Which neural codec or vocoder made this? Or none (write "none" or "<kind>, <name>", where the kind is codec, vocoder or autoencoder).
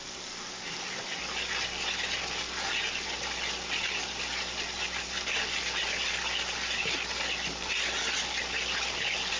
none